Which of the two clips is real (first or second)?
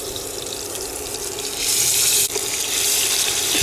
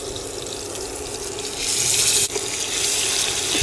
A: second